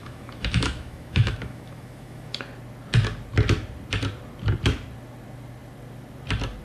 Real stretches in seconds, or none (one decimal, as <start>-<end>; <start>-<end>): 2.4-6.6